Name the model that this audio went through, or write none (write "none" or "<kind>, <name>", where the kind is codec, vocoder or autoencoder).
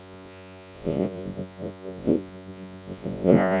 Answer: vocoder, Vocos